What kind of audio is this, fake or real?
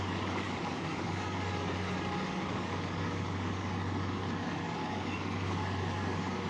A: fake